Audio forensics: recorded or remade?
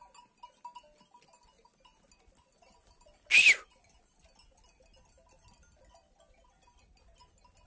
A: recorded